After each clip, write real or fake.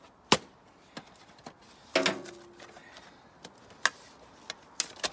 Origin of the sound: real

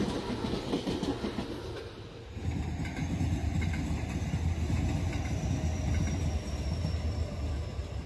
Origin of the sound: real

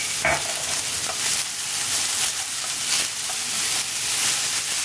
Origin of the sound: real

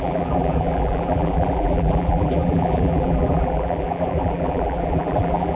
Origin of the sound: fake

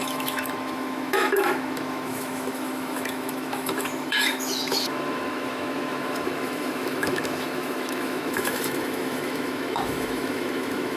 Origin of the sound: fake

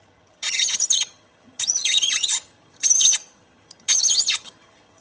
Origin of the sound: fake